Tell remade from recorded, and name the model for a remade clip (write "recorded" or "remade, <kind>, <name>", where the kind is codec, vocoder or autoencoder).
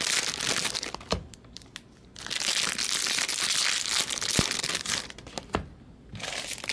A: recorded